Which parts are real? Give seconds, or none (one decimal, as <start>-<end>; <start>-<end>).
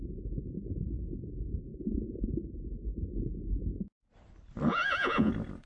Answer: 0.0-1.7; 2.3-4.7; 5.3-5.7